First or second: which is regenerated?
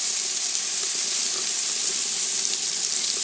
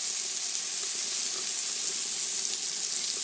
first